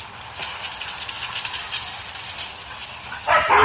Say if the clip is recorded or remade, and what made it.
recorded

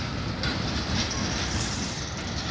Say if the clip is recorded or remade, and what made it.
recorded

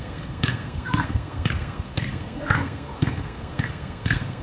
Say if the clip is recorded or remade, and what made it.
remade, codec, SNAC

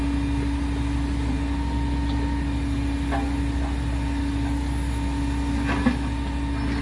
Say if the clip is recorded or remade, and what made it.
recorded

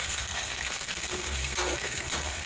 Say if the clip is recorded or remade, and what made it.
remade, codec, SNAC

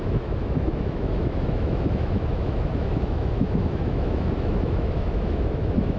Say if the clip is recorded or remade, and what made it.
remade, autoencoder, DAC-VAE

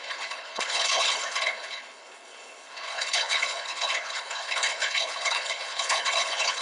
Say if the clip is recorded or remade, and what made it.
remade, codec, HILCodec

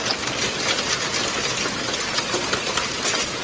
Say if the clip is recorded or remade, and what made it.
recorded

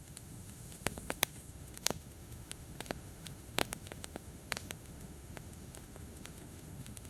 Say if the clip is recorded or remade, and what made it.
remade, autoencoder, DAC-VAE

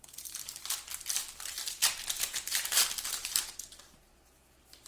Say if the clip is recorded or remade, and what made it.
recorded